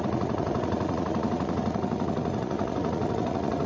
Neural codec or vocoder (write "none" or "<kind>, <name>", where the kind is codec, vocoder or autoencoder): vocoder, Vocos